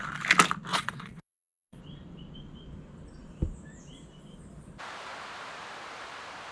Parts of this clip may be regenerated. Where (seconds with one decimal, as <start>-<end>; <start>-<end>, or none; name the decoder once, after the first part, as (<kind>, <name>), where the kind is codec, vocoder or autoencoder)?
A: 0.7-1.8 (vocoder, Vocos)

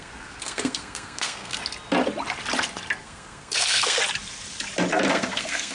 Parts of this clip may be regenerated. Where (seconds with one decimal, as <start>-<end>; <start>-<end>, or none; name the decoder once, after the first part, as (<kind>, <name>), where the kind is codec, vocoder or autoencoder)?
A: 0.0-1.6 (codec, SNAC); 3.0-4.0; 5.1-5.7